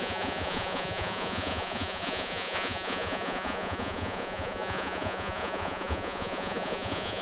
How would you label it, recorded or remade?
remade